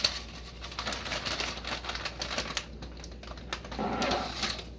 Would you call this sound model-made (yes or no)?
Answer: no